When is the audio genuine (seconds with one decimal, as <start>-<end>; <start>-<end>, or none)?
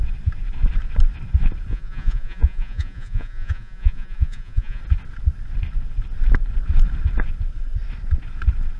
0.0-1.7; 4.8-8.8